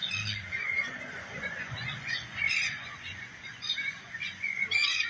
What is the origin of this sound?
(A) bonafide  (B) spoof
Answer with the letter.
B